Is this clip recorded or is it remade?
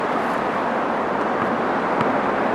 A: recorded